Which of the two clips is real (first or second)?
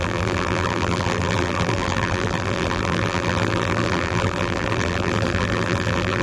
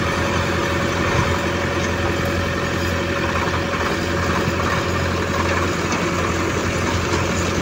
second